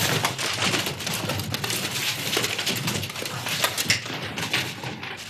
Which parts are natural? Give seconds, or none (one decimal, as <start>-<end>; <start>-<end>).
0.0-5.3